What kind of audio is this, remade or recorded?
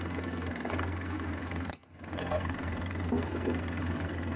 remade